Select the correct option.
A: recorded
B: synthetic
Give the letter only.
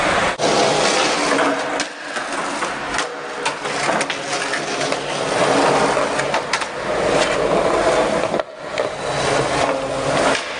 A